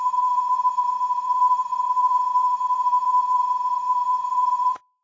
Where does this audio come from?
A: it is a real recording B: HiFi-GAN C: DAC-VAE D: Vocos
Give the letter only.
D